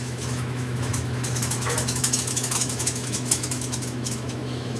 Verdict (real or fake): fake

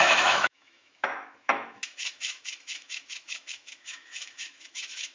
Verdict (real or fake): fake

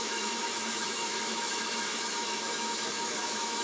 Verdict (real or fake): fake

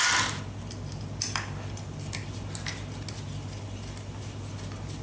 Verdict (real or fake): real